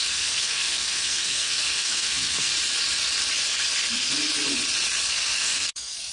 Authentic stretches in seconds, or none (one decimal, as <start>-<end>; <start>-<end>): 2.5-5.1